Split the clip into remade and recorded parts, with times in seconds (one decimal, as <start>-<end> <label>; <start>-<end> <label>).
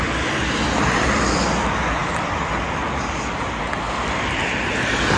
0.0-5.2 recorded